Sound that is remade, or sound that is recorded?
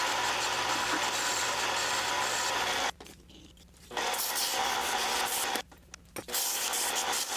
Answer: recorded